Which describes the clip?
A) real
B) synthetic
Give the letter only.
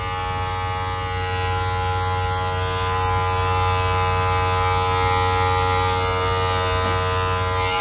A